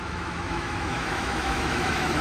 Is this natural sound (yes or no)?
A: no